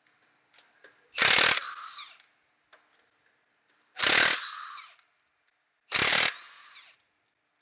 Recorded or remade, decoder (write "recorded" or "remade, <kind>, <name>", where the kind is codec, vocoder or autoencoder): recorded